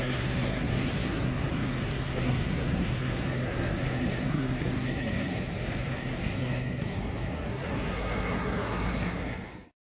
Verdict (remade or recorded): remade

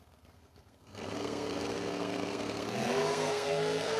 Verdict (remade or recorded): remade